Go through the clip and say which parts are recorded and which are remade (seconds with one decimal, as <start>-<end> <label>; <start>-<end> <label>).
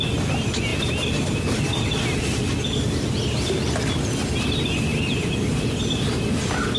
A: 0.0-6.8 recorded